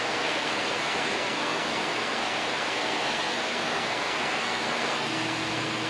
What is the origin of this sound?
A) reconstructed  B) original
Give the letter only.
A